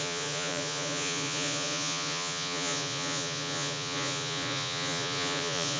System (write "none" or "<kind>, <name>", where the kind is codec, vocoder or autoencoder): vocoder, Vocos